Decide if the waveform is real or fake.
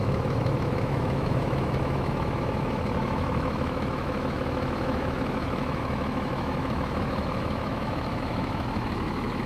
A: fake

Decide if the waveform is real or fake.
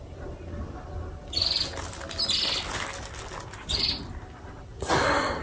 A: real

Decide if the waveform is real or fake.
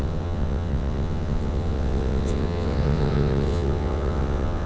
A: fake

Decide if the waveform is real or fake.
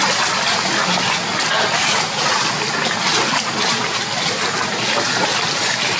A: real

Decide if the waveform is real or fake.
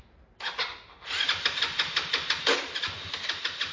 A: real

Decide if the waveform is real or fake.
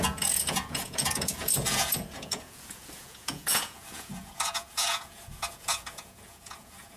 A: fake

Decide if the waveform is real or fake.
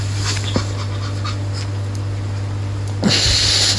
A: real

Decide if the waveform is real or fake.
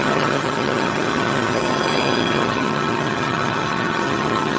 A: fake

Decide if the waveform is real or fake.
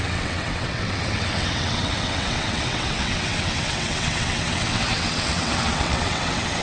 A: fake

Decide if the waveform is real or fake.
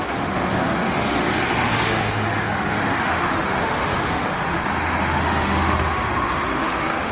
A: fake